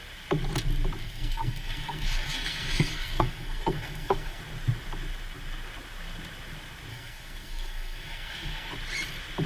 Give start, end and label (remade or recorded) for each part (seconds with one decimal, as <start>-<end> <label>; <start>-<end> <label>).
0.0-1.0 recorded; 1.0-4.4 remade; 4.4-6.9 recorded; 6.9-8.7 remade; 8.7-9.5 recorded